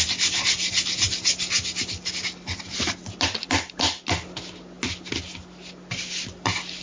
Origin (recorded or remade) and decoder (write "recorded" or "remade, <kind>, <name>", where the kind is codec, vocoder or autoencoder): recorded